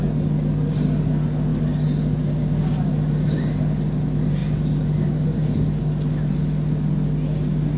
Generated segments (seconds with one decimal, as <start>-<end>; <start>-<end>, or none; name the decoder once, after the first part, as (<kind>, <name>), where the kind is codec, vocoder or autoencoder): none